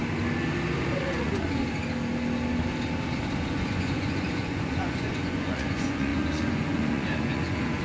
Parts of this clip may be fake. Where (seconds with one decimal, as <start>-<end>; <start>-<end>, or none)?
1.0-1.6; 3.5-7.8